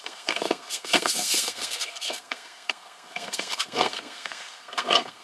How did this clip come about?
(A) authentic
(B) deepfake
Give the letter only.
B